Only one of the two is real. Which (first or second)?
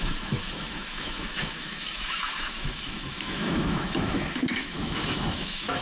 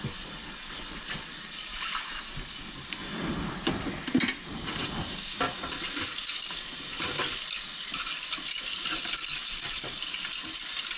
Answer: second